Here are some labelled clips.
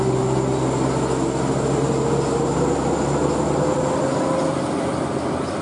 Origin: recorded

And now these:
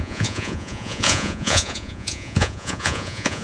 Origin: remade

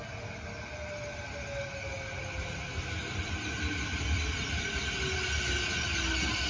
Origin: recorded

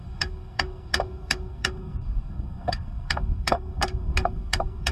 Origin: remade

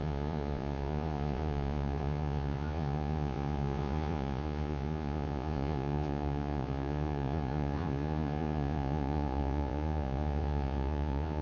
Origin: remade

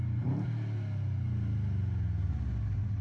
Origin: recorded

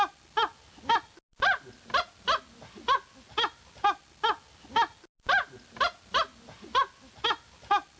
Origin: recorded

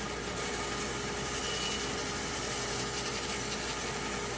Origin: recorded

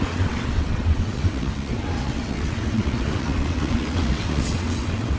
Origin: remade